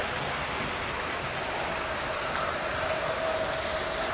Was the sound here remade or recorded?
recorded